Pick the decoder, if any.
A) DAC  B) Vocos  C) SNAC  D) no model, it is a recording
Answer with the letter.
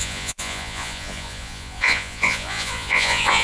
B